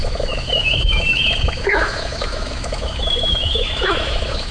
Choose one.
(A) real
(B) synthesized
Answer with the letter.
B